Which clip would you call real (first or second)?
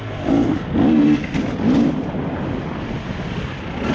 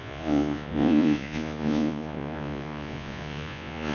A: first